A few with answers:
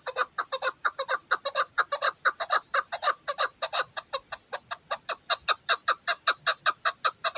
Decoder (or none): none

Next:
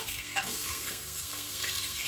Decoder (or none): codec, SNAC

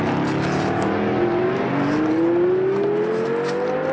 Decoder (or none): none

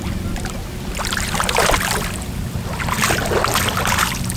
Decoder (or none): none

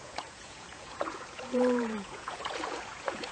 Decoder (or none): vocoder, Vocos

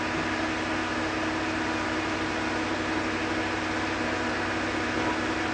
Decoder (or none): none